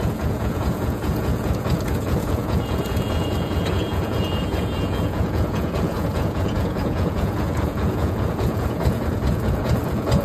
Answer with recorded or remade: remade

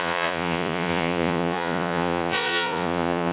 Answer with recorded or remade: remade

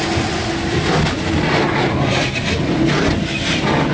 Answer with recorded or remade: recorded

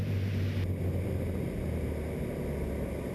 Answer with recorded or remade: recorded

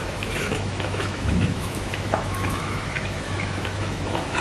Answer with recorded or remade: remade